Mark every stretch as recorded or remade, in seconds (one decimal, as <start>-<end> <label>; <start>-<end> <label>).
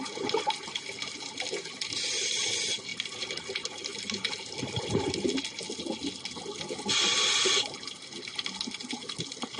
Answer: 0.0-9.6 recorded